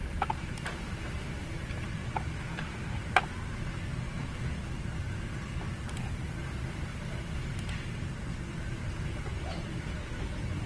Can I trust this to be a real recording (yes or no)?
no